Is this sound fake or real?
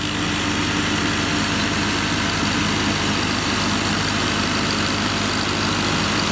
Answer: real